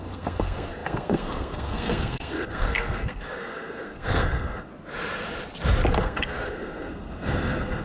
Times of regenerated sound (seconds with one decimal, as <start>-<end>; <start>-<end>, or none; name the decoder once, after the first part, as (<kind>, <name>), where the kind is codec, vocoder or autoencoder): 0.0-4.7 (codec, SNAC); 6.0-7.8